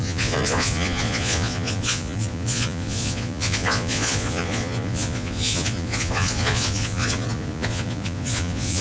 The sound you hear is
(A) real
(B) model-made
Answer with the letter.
B